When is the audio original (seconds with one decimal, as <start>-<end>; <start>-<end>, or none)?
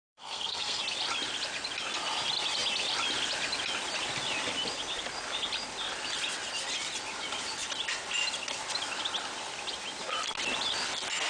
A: 0.8-11.3